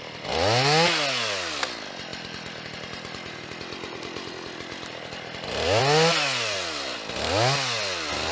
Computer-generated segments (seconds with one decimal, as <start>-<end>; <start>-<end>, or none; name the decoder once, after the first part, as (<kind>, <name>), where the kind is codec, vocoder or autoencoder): none